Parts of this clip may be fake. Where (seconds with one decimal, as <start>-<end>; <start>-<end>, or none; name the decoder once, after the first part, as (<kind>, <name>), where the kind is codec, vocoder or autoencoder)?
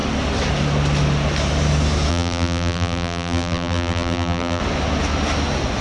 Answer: 2.1-4.6 (vocoder, BigVGAN v2)